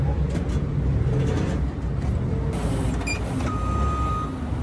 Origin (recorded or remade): recorded